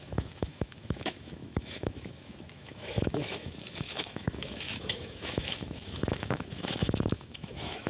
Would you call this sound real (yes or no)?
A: no